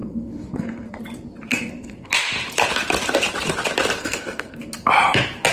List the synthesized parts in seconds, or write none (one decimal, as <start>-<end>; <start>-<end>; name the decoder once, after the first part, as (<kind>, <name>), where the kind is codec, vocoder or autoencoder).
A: 0.0-1.0 (codec, SNAC); 1.5-2.1; 4.0-4.7